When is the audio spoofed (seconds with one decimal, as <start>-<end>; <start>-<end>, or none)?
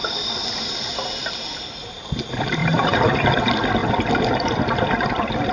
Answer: 2.6-3.1; 3.8-4.6